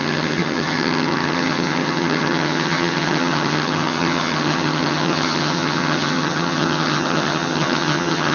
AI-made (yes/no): yes